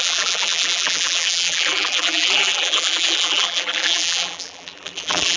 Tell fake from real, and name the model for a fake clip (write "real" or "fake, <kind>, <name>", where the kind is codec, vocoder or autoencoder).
fake, vocoder, BigVGAN v2